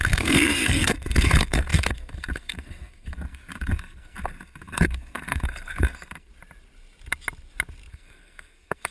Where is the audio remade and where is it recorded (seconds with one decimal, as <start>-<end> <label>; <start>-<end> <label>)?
0.0-6.3 remade; 6.3-7.9 recorded; 7.9-8.9 remade